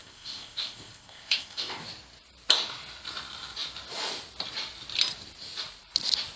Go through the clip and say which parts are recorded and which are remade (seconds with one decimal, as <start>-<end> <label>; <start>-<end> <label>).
0.0-1.8 remade; 1.8-6.4 recorded